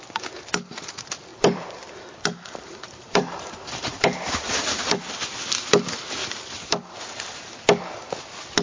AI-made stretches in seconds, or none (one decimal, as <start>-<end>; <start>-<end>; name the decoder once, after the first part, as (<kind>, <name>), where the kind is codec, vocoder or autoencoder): 1.3-5.0 (vocoder, BigVGAN v2)